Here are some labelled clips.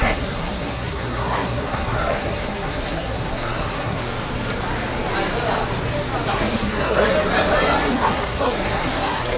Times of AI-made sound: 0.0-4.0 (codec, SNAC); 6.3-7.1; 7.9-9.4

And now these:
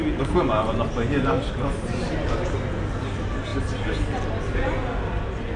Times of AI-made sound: none

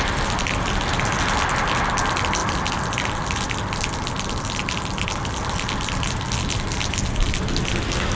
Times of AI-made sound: none

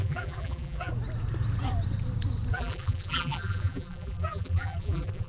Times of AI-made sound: 0.0-0.9 (vocoder, BigVGAN v2); 2.5-5.3